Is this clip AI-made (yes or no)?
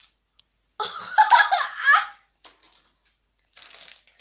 no